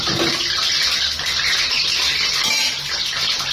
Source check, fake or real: real